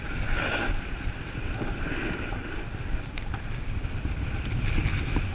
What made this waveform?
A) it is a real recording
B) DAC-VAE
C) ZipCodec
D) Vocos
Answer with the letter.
A